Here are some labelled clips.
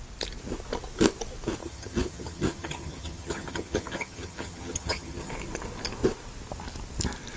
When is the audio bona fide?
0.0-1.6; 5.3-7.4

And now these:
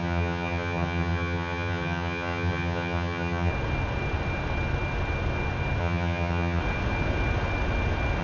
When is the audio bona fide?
3.5-5.8; 6.6-8.2

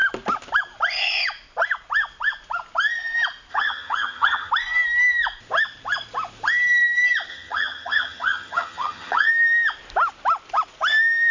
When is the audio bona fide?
0.0-3.5; 4.5-7.3; 9.3-11.3

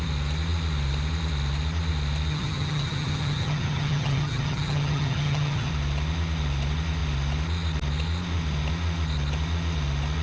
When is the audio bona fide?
0.0-2.3; 5.7-10.2

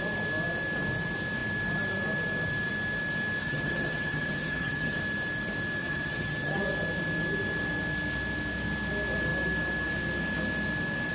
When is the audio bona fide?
0.0-3.4; 5.0-5.8; 6.6-11.1

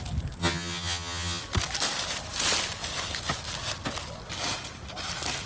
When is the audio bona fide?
0.0-0.4; 1.4-5.5

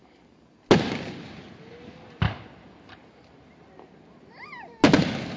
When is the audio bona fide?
0.0-5.4

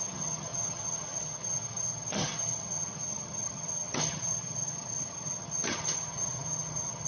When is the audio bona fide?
none